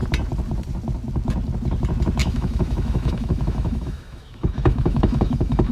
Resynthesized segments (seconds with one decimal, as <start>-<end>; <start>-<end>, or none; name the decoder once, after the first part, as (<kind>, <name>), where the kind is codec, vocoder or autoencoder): 2.2-5.7 (autoencoder, DAC-VAE)